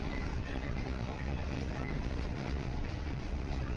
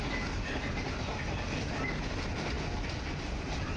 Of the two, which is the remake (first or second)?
first